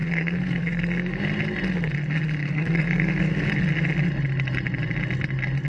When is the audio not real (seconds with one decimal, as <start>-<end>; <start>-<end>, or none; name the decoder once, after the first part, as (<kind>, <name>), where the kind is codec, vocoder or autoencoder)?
0.0-1.2 (codec, SNAC); 2.4-3.4